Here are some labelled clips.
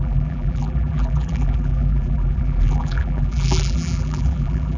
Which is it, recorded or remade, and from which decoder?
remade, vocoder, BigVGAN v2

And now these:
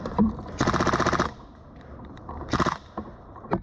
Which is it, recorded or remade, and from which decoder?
remade, vocoder, BigVGAN v2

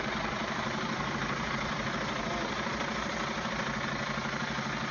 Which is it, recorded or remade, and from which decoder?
remade, vocoder, BigVGAN v2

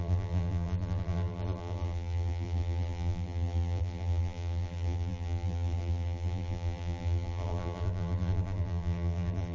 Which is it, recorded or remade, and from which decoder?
remade, vocoder, BigVGAN v2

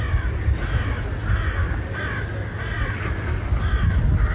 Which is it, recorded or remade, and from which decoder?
recorded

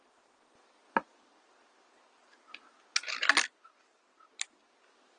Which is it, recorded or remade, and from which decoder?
recorded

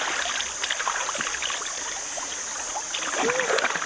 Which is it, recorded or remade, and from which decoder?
recorded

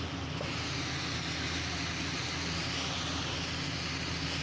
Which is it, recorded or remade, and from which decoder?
remade, vocoder, BigVGAN v2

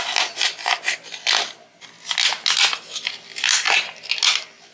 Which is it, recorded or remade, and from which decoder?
recorded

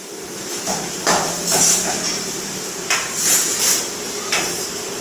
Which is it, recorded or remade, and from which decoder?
remade, vocoder, BigVGAN v2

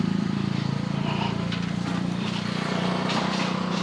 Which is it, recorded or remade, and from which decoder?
remade, vocoder, BigVGAN v2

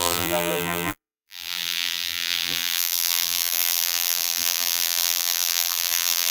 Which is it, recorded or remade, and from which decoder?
remade, vocoder, BigVGAN v2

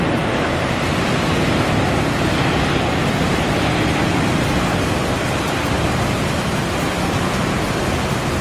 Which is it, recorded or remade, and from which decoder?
remade, vocoder, BigVGAN v2